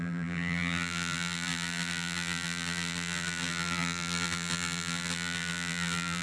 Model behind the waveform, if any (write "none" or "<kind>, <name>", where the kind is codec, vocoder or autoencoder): vocoder, BigVGAN v2